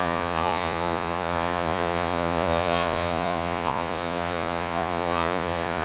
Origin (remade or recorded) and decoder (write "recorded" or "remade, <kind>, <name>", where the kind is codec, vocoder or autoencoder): remade, vocoder, Vocos